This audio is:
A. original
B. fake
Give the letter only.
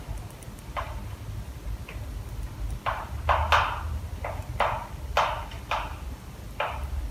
A